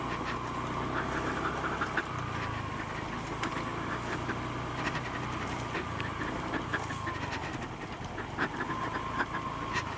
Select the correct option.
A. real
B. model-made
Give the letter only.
A